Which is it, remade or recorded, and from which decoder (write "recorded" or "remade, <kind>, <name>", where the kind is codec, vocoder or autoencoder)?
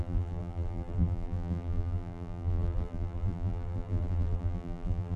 remade, vocoder, BigVGAN v2